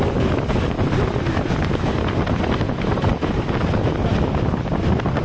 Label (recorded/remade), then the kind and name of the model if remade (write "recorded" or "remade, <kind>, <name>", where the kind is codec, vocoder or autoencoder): recorded